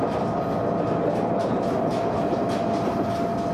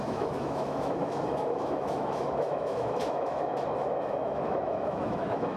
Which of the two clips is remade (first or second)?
second